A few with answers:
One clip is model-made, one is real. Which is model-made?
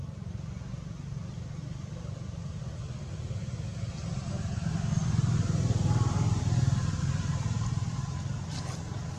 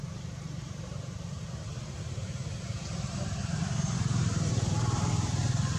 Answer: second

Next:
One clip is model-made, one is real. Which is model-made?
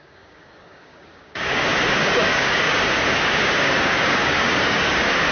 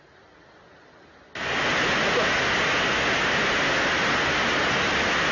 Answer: first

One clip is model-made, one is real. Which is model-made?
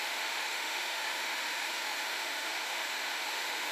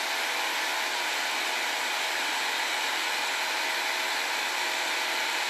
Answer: first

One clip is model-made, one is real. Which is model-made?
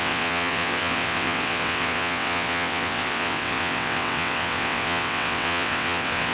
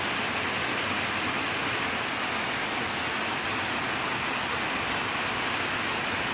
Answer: first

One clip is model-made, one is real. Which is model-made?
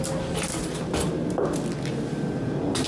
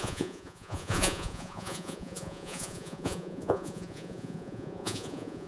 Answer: second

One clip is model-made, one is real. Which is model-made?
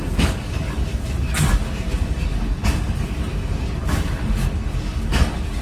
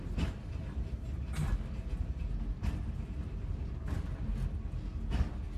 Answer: first